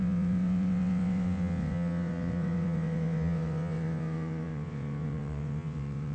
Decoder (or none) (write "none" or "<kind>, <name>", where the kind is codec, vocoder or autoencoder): vocoder, WaveNeXt